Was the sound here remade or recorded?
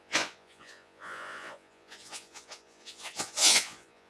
remade